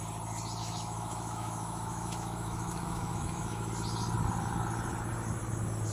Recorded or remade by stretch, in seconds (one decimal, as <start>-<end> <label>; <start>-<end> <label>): 0.0-0.6 recorded; 0.6-3.7 remade; 3.7-5.9 recorded